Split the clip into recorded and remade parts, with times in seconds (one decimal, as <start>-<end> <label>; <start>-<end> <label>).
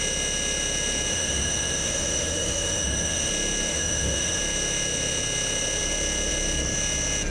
0.0-1.1 recorded; 1.1-3.3 remade; 3.3-3.7 recorded; 3.7-4.4 remade; 4.4-7.3 recorded